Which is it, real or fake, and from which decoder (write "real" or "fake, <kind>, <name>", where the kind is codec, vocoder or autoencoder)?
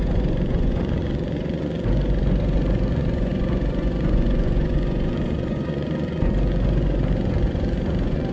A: fake, vocoder, Vocos